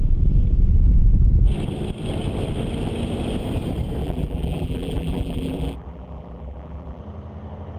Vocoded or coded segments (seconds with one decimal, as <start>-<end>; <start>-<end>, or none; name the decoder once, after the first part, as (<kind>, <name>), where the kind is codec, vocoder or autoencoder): 4.0-7.0 (vocoder, BigVGAN v2)